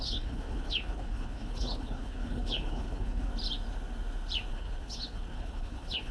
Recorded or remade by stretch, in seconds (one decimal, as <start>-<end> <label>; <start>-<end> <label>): 0.0-3.3 remade; 3.3-4.5 recorded; 4.5-6.1 remade